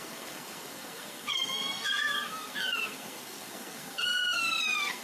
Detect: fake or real fake